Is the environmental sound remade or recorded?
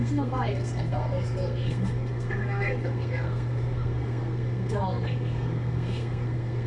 remade